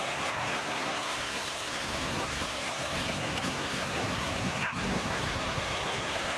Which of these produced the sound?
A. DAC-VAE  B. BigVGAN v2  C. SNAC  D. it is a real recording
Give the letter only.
C